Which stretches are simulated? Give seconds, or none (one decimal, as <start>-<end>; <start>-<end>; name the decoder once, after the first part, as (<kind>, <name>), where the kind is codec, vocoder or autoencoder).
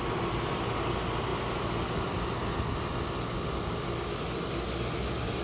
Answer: none